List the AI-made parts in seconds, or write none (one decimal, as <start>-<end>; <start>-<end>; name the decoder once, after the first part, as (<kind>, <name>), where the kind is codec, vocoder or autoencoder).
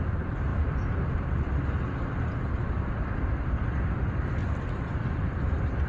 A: 4.4-5.9 (vocoder, BigVGAN v2)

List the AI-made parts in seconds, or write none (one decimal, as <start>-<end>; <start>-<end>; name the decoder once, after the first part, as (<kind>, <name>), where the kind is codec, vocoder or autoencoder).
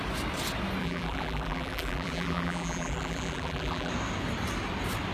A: 0.8-3.9 (vocoder, BigVGAN v2)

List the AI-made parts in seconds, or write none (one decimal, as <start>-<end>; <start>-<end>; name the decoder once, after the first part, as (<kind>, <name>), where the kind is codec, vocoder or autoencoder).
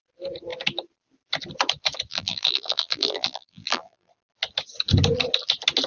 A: 2.1-4.1 (vocoder, BigVGAN v2)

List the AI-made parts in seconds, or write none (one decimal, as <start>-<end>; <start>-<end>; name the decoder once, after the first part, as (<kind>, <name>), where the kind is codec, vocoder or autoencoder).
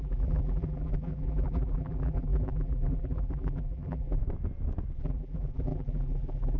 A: 0.0-4.2 (vocoder, BigVGAN v2); 4.9-6.6